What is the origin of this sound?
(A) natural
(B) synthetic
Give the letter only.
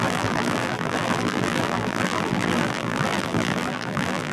B